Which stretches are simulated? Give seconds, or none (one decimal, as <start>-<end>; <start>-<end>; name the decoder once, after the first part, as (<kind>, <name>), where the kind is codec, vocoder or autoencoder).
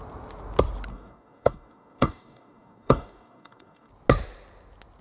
0.9-3.9 (codec, DAC)